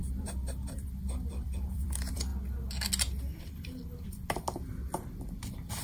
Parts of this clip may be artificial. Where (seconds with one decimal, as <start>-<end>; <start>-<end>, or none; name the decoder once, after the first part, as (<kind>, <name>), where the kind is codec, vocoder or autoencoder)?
0.0-2.3 (vocoder, BigVGAN v2)